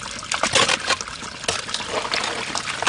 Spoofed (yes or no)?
no